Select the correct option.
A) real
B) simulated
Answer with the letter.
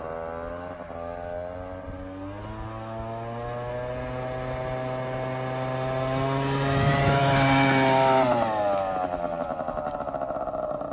A